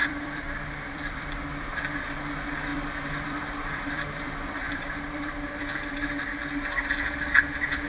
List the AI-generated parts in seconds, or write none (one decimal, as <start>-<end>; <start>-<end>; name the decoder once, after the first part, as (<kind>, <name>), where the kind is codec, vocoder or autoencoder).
0.0-2.2 (vocoder, BigVGAN v2); 2.7-5.7

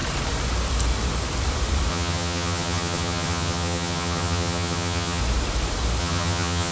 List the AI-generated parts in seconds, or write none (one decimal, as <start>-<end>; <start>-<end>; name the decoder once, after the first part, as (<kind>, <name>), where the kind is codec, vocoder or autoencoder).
1.9-5.2 (vocoder, HiFi-GAN); 6.0-6.7

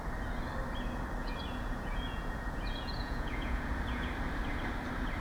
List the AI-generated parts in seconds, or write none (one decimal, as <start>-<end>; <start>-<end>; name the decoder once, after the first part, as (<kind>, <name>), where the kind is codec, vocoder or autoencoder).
1.2-4.1 (vocoder, Vocos)

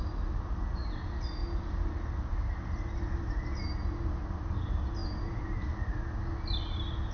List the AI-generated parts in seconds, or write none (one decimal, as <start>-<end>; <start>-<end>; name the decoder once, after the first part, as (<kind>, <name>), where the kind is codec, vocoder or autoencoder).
none